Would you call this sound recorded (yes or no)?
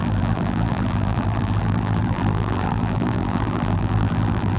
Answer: no